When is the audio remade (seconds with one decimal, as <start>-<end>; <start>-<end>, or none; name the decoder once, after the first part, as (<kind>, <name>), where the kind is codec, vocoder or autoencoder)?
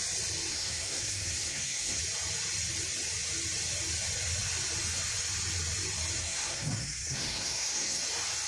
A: 0.5-2.0 (codec, SNAC); 6.2-8.0